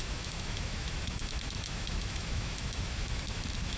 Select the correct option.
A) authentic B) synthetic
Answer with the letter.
B